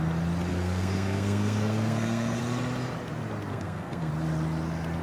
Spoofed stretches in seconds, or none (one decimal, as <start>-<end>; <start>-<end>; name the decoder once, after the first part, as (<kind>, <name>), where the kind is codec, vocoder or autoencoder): 0.5-2.4 (codec, SNAC); 3.5-4.1

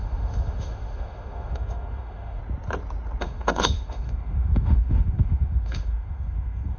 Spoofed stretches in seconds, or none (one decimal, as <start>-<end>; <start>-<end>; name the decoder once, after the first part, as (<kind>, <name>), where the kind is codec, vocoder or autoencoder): 0.0-2.4 (autoencoder, DAC-VAE); 3.2-6.8